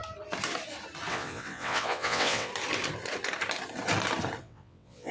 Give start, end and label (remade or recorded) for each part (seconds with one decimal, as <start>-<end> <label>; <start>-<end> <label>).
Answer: 0.0-1.1 recorded; 1.1-2.5 remade; 2.5-4.4 recorded; 4.4-5.1 remade